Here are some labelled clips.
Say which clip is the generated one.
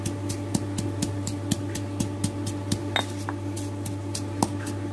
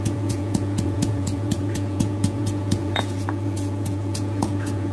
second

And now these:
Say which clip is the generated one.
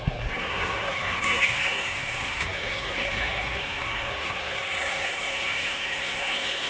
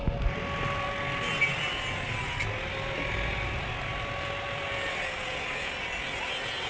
first